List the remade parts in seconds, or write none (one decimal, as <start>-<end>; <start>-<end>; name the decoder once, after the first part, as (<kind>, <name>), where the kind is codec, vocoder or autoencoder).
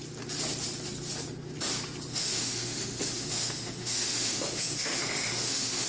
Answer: 2.1-5.9 (autoencoder, DAC-VAE)